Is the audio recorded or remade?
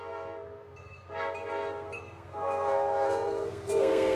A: remade